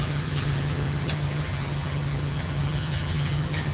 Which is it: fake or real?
fake